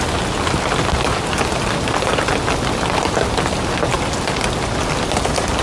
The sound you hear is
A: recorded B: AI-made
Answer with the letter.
A